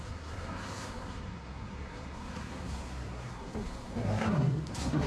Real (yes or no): no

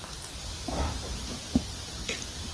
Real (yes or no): yes